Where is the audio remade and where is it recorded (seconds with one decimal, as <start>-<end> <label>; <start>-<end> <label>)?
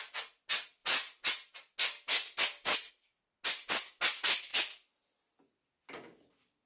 0.0-6.7 recorded